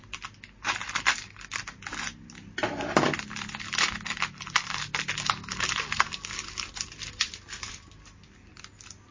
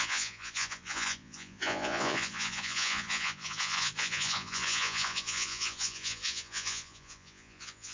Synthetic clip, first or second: second